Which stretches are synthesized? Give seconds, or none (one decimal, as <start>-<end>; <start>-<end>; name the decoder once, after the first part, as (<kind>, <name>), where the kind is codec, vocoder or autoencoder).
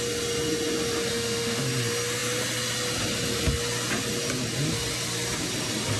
1.1-1.6 (autoencoder, DAC-VAE)